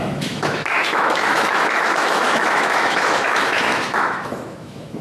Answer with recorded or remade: remade